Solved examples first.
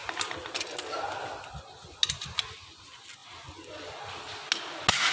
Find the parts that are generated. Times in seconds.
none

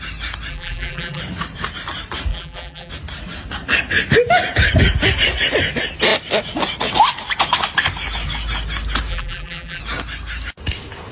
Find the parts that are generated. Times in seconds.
0.5-1.2; 2.3-2.9; 9.1-9.8

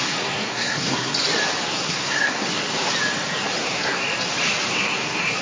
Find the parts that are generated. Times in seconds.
0.0-1.1; 1.7-2.6; 3.6-4.0; 4.7-5.4

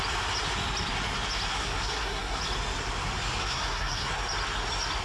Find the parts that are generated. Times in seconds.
1.5-2.4; 3.4-4.1

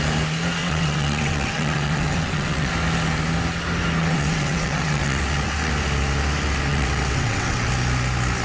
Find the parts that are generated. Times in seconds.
0.6-2.7; 4.0-5.7; 6.7-7.7